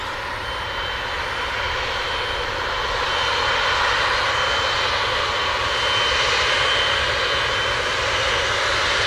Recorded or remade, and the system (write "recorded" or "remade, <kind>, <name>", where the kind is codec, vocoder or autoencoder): recorded